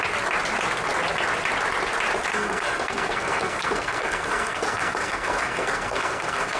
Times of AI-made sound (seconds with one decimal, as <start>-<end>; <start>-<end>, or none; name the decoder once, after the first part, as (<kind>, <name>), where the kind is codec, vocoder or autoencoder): 2.3-6.6 (codec, SNAC)